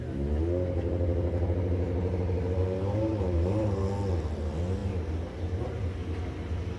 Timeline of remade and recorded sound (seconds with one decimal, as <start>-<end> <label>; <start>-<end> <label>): 0.0-2.6 recorded; 2.6-3.8 remade; 3.8-6.8 recorded